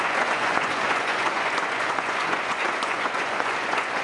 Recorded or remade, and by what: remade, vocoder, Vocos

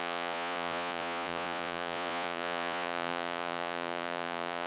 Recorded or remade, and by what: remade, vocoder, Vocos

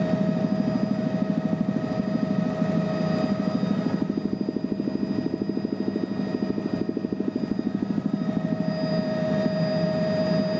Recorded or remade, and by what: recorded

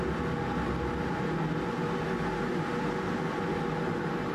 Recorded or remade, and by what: recorded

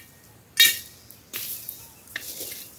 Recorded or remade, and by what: recorded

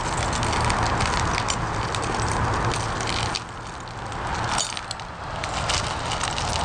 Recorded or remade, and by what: recorded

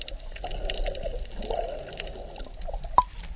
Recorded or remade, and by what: recorded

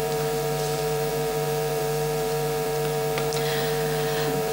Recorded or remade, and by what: remade, vocoder, BigVGAN v2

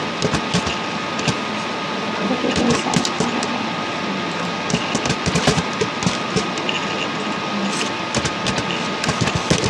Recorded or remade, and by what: recorded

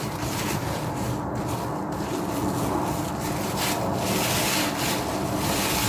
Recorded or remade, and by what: recorded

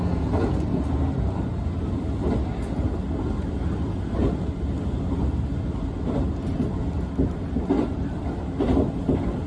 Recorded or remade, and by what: recorded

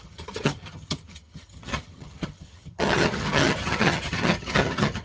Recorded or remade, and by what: remade, vocoder, HiFi-GAN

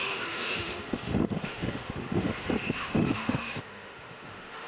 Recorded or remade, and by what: remade, autoencoder, DAC-VAE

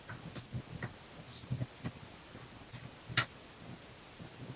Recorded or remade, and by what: recorded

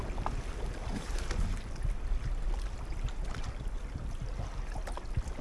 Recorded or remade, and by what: recorded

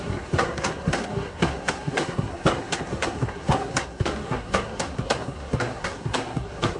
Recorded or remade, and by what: remade, codec, SNAC